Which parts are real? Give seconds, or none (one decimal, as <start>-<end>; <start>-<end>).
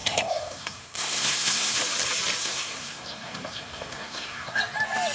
1.8-2.4; 4.6-5.1